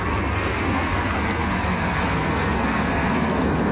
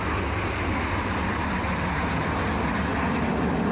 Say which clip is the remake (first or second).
first